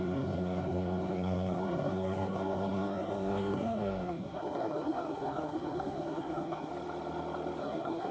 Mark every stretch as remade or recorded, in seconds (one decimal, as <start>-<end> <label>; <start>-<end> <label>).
0.0-6.7 remade; 6.7-7.6 recorded; 7.6-8.1 remade